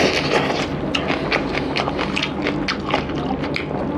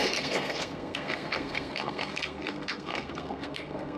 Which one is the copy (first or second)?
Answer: second